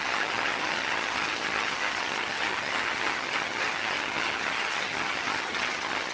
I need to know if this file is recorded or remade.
remade